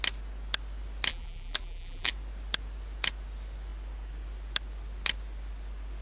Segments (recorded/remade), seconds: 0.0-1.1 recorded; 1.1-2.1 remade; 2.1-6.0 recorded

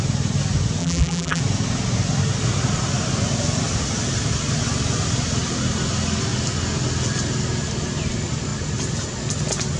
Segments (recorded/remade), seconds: 0.0-0.8 recorded; 0.8-1.4 remade; 1.4-9.8 recorded

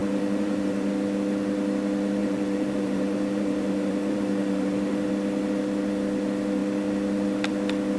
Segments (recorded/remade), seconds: 0.0-0.9 remade; 0.9-2.2 recorded; 2.2-5.1 remade; 5.1-8.0 recorded

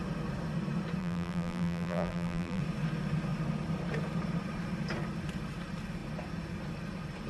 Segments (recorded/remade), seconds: 0.0-1.0 recorded; 1.0-2.6 remade; 2.6-7.3 recorded

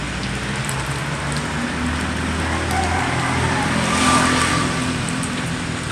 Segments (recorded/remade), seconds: 0.0-1.0 remade; 1.0-4.5 recorded; 4.5-5.9 remade

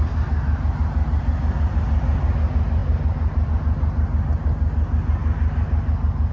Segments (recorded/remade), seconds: 0.0-2.8 recorded; 2.8-3.5 remade; 3.5-6.3 recorded

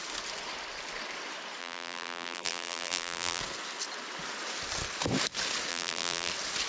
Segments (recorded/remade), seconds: 0.0-1.6 recorded; 1.6-3.4 remade; 3.4-5.7 recorded; 5.7-6.3 remade; 6.3-6.7 recorded

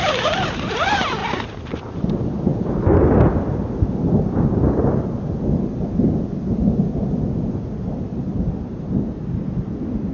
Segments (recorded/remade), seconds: 0.0-1.2 recorded; 1.2-2.1 remade; 2.1-10.1 recorded